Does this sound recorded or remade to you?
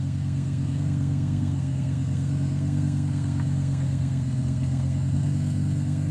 remade